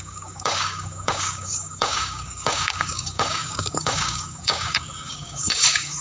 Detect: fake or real fake